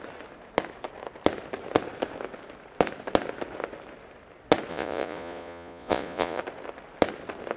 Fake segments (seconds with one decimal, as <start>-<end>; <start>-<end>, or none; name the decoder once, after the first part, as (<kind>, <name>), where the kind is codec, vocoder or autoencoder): 4.7-6.4 (vocoder, Vocos)